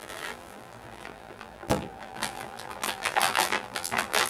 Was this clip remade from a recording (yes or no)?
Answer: yes